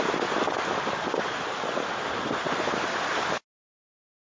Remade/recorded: recorded